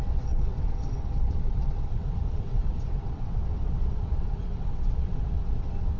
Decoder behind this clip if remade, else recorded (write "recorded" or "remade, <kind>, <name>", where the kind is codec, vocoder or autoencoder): remade, vocoder, WaveNeXt